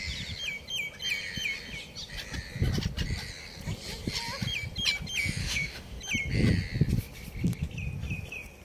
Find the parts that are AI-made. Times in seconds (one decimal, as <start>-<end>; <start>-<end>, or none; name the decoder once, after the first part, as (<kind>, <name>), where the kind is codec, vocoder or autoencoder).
5.4-6.0 (autoencoder, DAC-VAE)